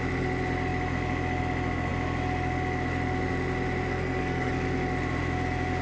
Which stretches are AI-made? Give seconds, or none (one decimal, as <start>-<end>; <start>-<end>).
3.9-4.5